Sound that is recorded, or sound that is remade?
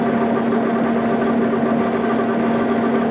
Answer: recorded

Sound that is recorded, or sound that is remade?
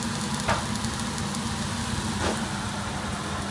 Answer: recorded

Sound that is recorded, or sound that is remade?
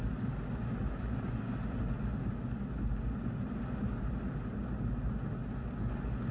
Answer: recorded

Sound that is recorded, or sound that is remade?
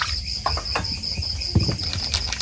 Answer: recorded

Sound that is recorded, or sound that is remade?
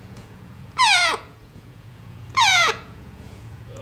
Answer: remade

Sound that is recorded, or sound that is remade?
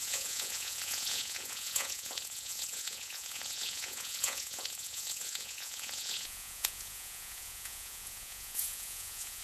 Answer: remade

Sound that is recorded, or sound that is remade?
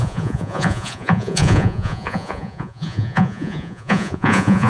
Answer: remade